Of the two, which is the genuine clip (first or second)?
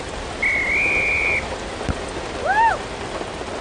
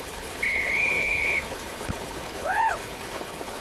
first